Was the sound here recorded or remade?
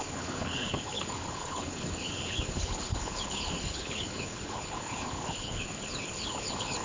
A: remade